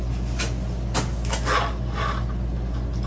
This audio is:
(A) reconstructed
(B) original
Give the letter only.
B